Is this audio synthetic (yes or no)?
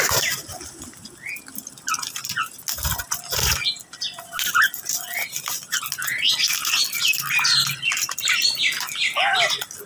no